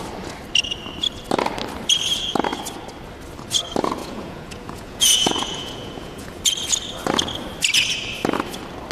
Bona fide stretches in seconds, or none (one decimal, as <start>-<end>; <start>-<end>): 0.0-4.0; 6.4-8.9